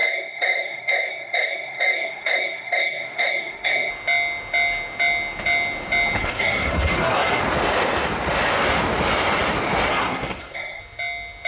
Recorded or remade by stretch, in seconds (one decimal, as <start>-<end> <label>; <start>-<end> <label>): 0.0-3.9 remade; 3.9-6.2 recorded; 6.2-7.4 remade; 7.4-9.9 recorded; 9.9-10.8 remade; 10.8-11.5 recorded